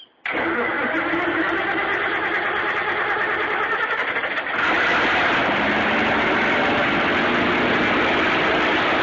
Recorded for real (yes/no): yes